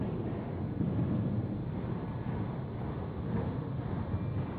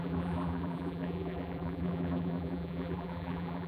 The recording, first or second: first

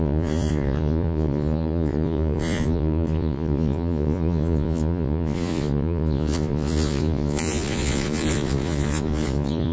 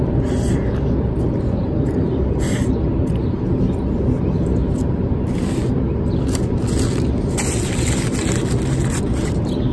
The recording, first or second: second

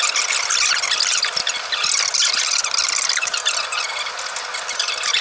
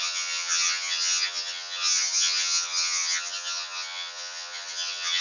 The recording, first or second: first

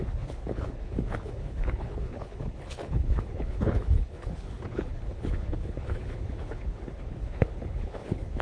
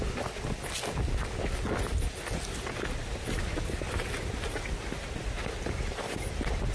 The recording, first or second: second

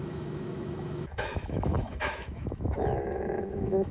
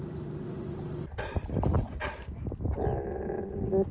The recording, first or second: second